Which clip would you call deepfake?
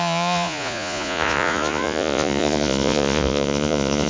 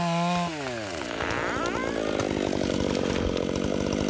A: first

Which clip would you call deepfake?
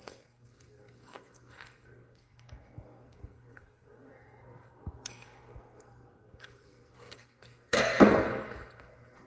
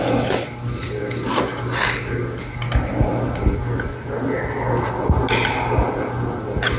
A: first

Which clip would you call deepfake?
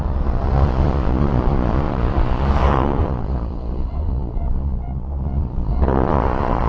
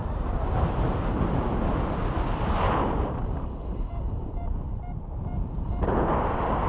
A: first